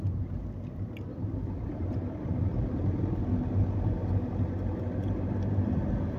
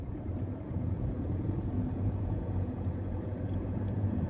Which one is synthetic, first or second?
second